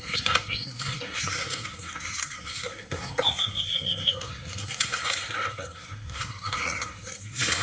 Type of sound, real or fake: fake